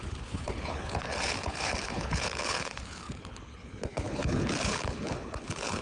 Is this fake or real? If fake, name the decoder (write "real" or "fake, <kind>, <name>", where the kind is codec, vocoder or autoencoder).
fake, codec, HILCodec